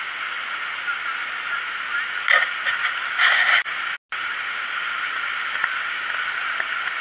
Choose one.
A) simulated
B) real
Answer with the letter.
B